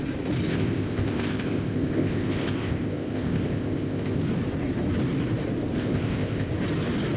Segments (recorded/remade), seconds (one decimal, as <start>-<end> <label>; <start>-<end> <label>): 0.0-0.5 recorded; 0.5-4.2 remade; 4.2-5.8 recorded; 5.8-6.5 remade; 6.5-7.2 recorded